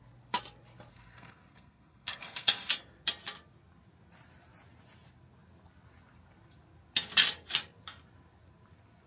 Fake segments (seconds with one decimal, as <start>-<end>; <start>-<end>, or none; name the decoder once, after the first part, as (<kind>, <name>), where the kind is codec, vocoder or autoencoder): 0.9-2.7 (codec, SNAC)